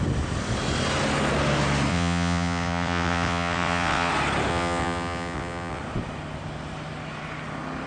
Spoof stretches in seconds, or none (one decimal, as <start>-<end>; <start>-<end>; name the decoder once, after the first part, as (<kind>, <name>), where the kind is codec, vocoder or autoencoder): 1.9-4.1 (vocoder, WaveNeXt); 4.5-5.8